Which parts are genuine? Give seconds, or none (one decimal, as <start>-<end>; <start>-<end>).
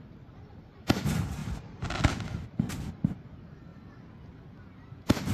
0.0-3.7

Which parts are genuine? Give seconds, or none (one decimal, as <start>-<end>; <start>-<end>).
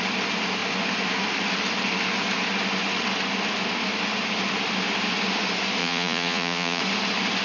0.0-5.8; 6.8-7.4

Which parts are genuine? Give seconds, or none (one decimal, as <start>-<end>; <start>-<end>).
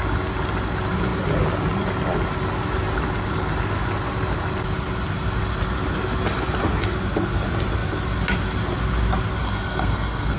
0.0-9.4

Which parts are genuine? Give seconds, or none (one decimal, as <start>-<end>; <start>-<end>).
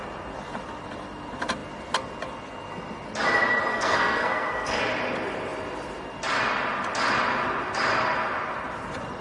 0.0-3.7; 4.8-9.2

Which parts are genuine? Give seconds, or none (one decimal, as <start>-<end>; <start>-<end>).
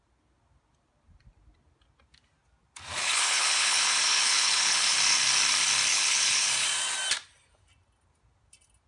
0.0-3.0; 5.0-5.9; 6.5-8.9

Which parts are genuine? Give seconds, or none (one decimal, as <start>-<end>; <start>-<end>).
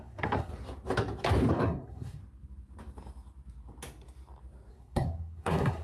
0.5-1.5; 2.2-4.7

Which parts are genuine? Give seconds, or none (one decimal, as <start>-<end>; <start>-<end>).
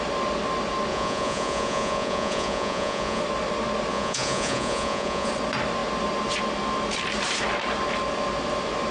0.0-0.9; 3.2-3.9; 5.3-8.9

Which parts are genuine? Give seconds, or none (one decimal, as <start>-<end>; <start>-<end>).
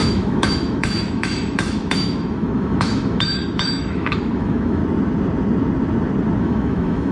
4.8-6.4